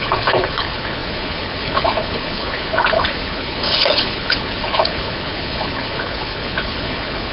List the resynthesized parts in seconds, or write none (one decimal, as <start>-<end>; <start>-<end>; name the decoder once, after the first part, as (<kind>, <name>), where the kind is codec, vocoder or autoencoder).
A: 0.0-7.3 (codec, HILCodec)